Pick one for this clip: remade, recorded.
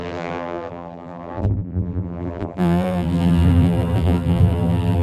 remade